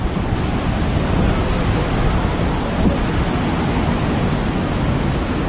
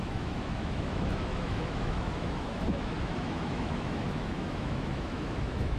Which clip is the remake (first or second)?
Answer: second